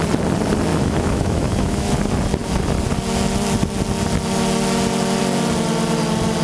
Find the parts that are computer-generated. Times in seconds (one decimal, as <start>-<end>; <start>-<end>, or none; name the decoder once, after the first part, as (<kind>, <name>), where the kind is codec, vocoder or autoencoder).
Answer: 0.7-1.9 (autoencoder, DAC-VAE)